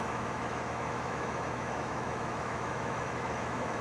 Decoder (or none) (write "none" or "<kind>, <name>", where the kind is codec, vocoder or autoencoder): autoencoder, DAC-VAE